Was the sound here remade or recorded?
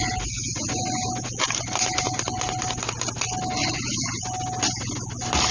recorded